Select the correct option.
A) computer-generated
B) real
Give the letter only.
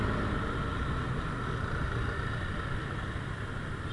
B